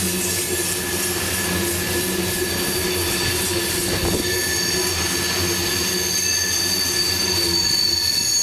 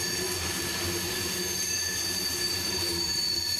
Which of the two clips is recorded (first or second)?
first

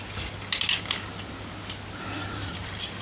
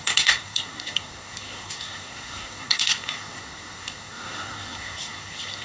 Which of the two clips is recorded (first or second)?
first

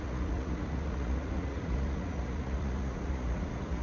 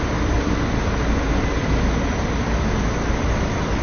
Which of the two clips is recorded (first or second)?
second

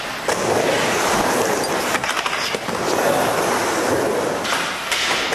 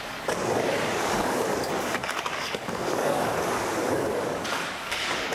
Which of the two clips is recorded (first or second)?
first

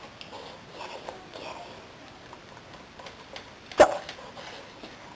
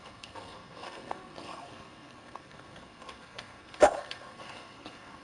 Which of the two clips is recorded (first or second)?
first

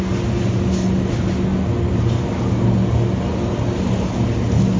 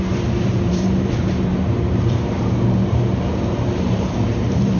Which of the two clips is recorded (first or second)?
first